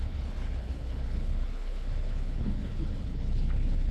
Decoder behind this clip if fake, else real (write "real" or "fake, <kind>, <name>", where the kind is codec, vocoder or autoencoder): fake, codec, HILCodec